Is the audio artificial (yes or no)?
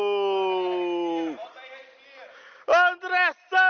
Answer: no